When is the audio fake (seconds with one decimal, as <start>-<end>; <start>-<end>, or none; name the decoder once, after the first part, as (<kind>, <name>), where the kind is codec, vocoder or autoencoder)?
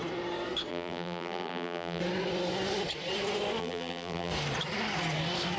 0.7-2.0 (vocoder, BigVGAN v2); 3.6-4.3